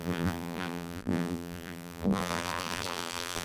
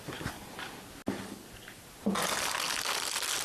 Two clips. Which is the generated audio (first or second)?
first